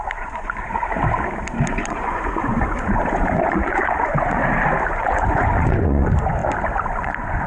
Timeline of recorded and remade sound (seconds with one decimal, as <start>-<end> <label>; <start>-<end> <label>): 0.0-0.8 remade; 0.8-1.9 recorded; 1.9-4.4 remade; 4.4-4.9 recorded; 4.9-6.4 remade; 6.4-7.0 recorded; 7.0-7.5 remade